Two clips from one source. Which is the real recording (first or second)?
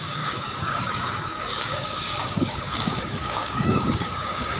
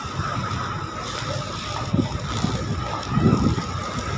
second